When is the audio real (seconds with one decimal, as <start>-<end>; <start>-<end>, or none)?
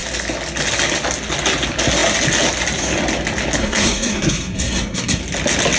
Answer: 0.0-3.6; 5.2-5.8